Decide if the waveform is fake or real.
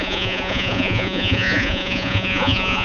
fake